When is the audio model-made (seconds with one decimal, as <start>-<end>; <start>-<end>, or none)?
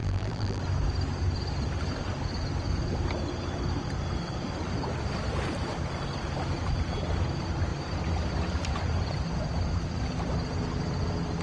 0.0-0.6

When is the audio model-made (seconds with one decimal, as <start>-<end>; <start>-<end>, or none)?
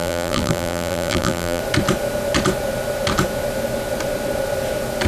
0.0-1.6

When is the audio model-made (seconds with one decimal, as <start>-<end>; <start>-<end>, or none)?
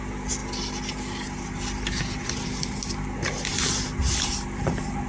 none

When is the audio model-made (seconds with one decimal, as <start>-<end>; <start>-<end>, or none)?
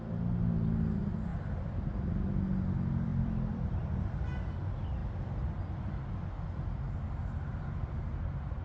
1.3-2.3; 3.1-4.5; 7.5-8.0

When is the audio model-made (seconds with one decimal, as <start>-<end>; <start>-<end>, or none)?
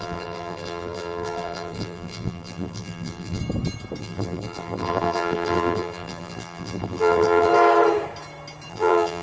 0.0-3.4; 4.0-7.5; 8.7-9.2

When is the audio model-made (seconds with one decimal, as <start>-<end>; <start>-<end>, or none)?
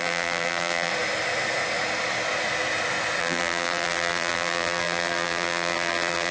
0.0-0.9; 3.2-6.3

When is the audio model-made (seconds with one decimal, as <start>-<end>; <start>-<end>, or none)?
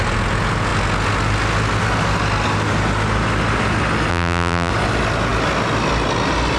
4.1-4.7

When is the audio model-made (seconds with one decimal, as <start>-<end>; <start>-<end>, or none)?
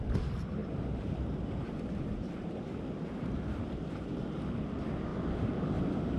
0.6-4.2